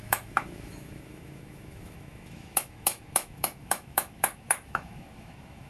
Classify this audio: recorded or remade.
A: remade